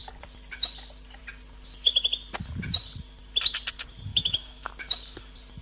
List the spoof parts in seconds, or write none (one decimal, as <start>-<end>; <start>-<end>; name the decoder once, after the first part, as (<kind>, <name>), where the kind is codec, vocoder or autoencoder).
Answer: 4.1-4.7 (autoencoder, DAC-VAE)